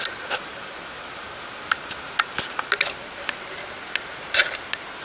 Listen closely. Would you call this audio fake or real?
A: real